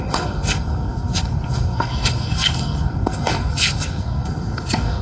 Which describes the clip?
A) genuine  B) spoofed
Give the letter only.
B